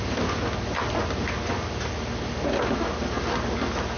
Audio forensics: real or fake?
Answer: real